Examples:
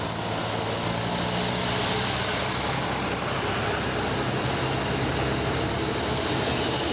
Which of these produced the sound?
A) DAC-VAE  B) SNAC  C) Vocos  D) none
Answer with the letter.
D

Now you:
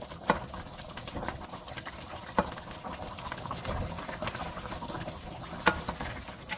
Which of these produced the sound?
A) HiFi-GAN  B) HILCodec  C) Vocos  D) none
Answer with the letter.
D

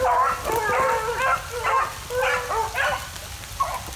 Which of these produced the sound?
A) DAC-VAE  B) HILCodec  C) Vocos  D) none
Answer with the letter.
D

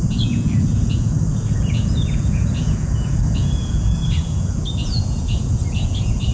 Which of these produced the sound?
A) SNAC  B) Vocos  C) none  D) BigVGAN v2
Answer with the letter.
B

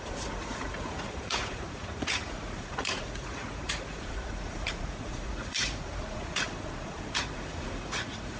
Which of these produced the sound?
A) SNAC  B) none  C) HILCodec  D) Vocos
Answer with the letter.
D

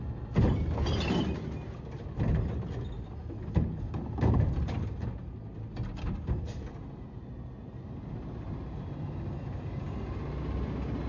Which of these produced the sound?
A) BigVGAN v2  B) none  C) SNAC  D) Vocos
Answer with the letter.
B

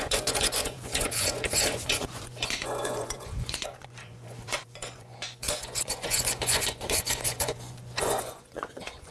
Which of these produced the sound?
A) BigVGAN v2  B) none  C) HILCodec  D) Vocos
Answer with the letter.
D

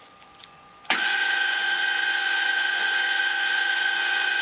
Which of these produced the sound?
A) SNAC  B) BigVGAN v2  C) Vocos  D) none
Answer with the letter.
C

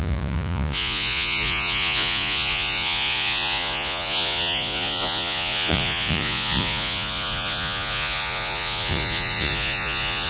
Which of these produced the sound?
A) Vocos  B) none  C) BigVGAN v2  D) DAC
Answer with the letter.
A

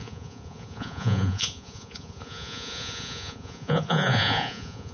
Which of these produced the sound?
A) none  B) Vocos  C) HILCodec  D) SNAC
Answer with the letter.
B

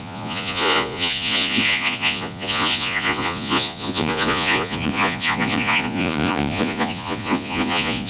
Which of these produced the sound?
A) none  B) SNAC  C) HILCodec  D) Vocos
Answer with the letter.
D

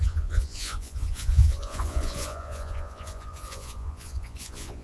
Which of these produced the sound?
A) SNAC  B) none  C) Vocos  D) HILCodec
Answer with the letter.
C